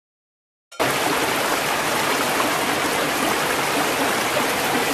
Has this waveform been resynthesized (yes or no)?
no